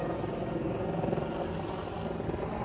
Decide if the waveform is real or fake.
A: real